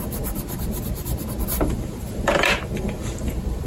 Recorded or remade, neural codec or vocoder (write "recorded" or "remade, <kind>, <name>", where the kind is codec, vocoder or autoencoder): remade, vocoder, BigVGAN v2